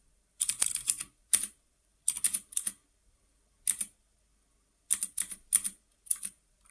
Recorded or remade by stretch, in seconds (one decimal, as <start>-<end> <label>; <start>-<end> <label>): 0.0-1.9 remade; 1.9-5.0 recorded; 5.0-5.4 remade; 5.4-6.1 recorded; 6.1-6.7 remade